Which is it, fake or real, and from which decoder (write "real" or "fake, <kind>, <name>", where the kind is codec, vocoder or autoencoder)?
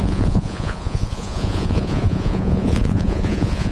fake, vocoder, Vocos